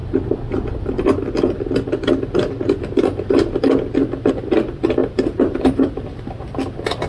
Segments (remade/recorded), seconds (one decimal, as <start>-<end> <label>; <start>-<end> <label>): 0.0-5.0 recorded; 5.0-5.9 remade; 5.9-7.1 recorded